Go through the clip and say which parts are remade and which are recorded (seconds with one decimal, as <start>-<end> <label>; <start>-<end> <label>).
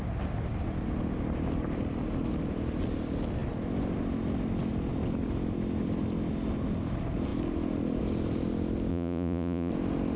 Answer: 0.0-8.9 recorded; 8.9-9.7 remade; 9.7-10.2 recorded